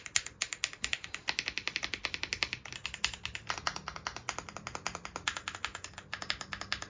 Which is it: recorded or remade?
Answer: recorded